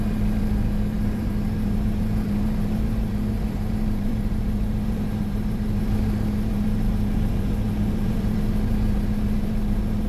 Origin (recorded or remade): remade